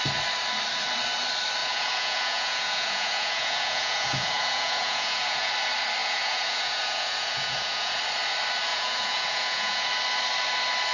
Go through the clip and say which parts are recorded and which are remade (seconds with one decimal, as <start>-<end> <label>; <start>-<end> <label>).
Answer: 0.0-1.6 recorded; 1.6-5.5 remade; 5.5-6.0 recorded; 6.0-8.0 remade; 8.0-8.7 recorded; 8.7-9.9 remade; 9.9-10.9 recorded